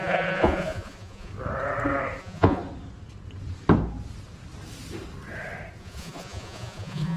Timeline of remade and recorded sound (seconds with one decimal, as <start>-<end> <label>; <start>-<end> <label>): 0.0-1.3 remade; 1.3-2.2 recorded; 2.2-2.6 remade; 2.6-5.8 recorded; 5.8-7.2 remade